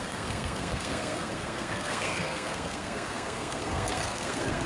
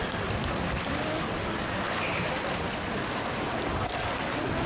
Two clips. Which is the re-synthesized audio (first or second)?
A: first